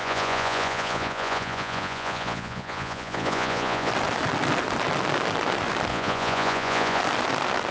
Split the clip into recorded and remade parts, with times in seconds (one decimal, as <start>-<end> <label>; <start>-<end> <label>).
0.0-3.9 remade; 3.9-5.9 recorded; 5.9-7.0 remade; 7.0-7.7 recorded